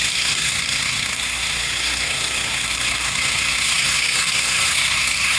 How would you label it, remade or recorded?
remade